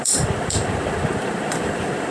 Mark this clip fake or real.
fake